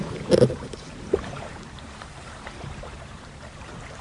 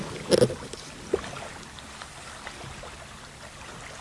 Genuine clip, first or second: second